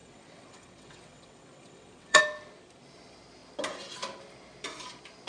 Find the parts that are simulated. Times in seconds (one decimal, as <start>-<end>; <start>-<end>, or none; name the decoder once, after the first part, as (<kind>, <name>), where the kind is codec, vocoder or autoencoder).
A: 0.0-2.2 (vocoder, WaveNeXt)